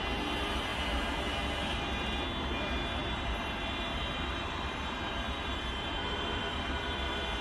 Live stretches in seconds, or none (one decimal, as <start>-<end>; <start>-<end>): 0.0-3.0